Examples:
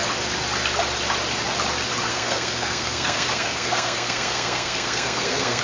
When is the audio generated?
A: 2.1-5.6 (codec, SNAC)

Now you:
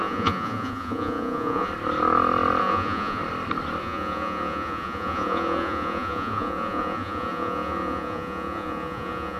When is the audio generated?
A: 0.0-1.7 (vocoder, Vocos); 2.6-3.2; 3.8-9.4

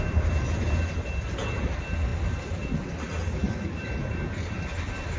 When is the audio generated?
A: none

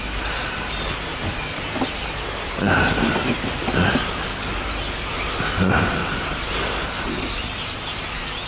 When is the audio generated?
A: none

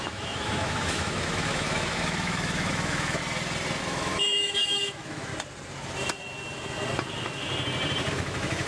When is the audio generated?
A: 0.0-3.2 (autoencoder, DAC-VAE); 3.8-5.3; 8.1-8.7

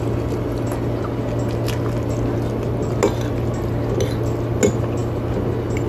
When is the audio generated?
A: none